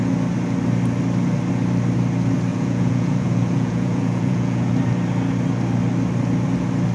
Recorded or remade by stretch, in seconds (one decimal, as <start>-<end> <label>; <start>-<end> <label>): 0.0-2.5 recorded; 2.5-4.7 remade; 4.7-6.9 recorded